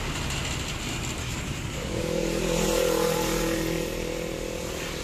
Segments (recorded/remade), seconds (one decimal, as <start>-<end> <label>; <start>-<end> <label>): 0.0-1.2 recorded; 1.2-2.4 remade; 2.4-5.0 recorded